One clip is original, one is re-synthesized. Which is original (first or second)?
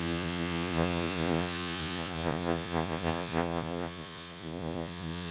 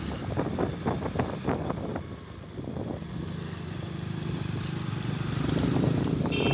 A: second